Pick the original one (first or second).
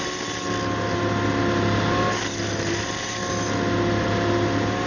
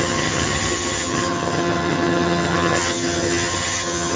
first